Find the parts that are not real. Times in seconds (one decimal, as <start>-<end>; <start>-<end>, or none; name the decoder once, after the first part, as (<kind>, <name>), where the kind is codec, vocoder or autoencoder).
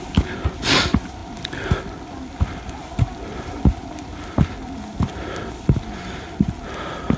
none